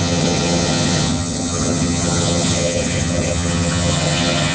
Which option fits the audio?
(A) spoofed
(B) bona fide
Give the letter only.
A